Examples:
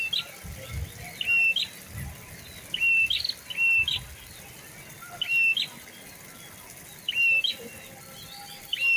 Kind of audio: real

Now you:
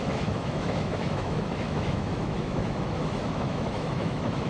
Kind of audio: fake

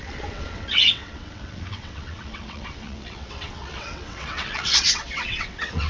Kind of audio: fake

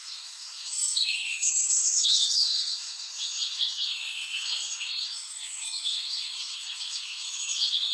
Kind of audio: fake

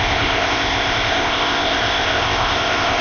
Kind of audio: fake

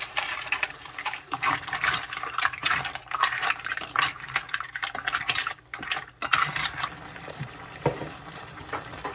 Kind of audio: fake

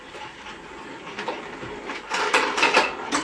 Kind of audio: fake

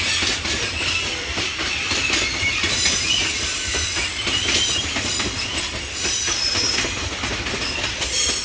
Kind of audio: fake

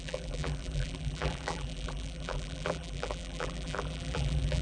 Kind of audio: fake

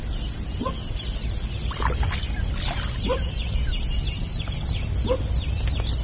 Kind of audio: real